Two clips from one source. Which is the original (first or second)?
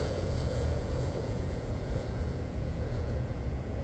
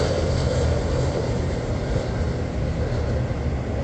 second